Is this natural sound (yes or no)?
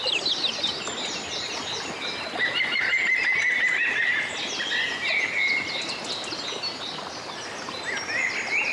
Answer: yes